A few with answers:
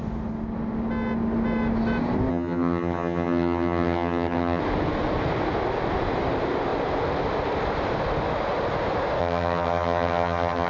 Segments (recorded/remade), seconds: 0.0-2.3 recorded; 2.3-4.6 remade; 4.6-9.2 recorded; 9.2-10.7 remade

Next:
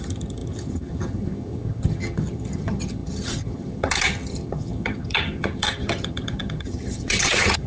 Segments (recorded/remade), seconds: 0.0-7.7 remade

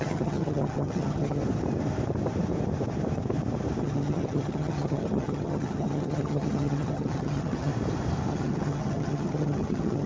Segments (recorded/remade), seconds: 0.0-1.4 remade; 1.4-3.8 recorded; 3.8-7.7 remade; 7.7-8.3 recorded; 8.3-10.1 remade